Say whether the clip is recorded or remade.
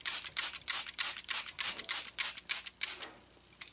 recorded